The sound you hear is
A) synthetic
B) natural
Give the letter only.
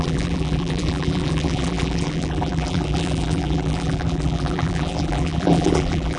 A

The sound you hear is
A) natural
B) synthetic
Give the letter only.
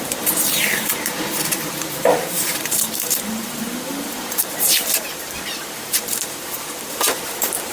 B